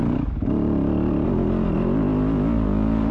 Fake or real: real